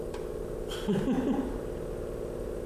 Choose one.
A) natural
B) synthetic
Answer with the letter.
A